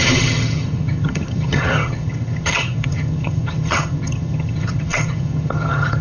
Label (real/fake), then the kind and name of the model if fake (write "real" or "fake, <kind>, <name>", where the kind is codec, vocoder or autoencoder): fake, vocoder, HiFi-GAN